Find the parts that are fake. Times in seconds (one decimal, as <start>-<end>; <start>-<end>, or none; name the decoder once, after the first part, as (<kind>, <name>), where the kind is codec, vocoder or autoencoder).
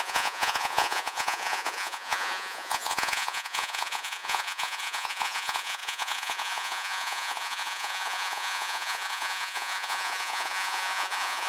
0.0-11.5 (vocoder, Vocos)